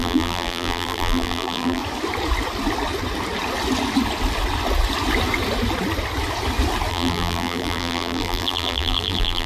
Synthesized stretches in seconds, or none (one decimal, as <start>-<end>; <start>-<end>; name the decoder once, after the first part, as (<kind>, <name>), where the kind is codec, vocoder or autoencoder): 0.0-1.8 (vocoder, BigVGAN v2); 6.9-9.5